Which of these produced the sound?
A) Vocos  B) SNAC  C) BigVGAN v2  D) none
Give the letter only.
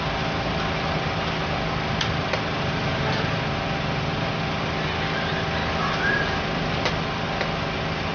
D